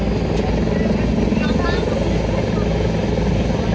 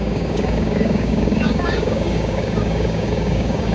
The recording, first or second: first